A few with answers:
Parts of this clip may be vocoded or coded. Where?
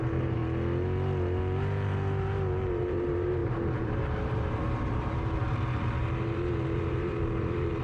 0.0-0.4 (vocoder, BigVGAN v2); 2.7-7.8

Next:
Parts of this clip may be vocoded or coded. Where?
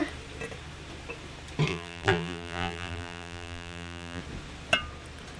1.7-4.2 (vocoder, BigVGAN v2)